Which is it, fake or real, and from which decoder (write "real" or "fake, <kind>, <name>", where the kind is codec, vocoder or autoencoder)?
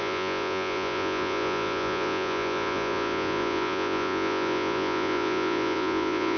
fake, vocoder, Vocos